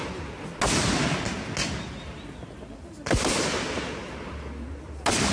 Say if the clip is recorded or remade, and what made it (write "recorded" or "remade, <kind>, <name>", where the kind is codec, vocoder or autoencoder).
recorded